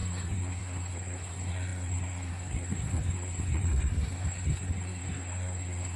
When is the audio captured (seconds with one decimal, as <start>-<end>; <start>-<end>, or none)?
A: none